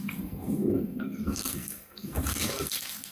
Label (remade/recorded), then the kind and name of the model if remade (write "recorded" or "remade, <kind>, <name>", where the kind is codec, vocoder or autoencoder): remade, codec, SNAC